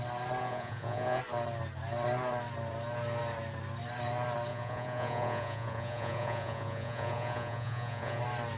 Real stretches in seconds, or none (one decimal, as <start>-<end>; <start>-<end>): 0.0-0.4; 1.2-4.5; 8.2-8.6